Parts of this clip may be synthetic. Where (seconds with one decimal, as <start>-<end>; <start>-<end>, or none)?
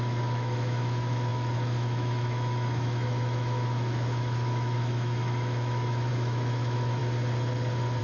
0.0-7.0